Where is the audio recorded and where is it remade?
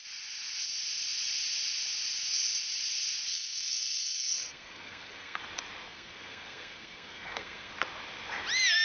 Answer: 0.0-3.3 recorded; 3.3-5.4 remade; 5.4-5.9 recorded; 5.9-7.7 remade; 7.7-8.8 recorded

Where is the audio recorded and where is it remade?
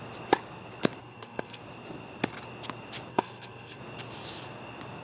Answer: 0.0-1.0 recorded; 1.0-1.6 remade; 1.6-3.1 recorded; 3.1-3.8 remade; 3.8-5.0 recorded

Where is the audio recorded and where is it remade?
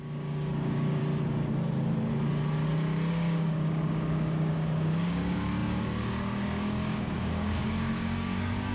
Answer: 0.0-1.0 remade; 1.0-3.1 recorded; 3.1-8.7 remade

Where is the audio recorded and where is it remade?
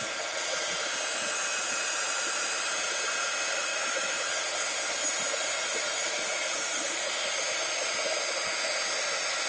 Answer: 0.0-3.7 recorded; 3.7-4.3 remade; 4.3-9.5 recorded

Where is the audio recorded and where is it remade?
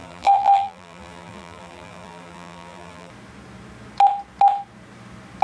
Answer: 0.0-3.1 remade; 3.1-5.4 recorded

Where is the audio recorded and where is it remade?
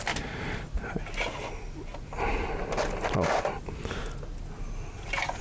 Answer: 0.0-5.4 recorded